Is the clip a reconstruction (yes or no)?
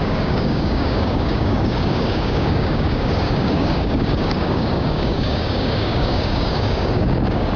yes